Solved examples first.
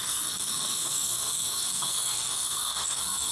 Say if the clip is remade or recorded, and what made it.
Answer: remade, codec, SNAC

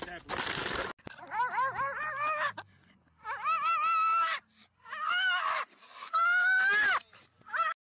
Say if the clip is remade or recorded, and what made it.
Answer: recorded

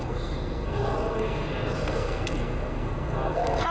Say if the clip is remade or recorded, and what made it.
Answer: remade, codec, SNAC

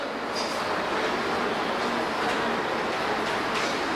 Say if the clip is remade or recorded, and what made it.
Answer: recorded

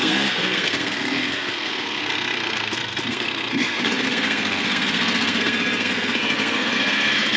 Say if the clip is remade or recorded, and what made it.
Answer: remade, codec, SNAC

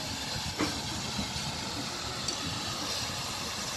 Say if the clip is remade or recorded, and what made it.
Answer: recorded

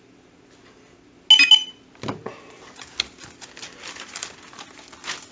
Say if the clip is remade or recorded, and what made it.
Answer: recorded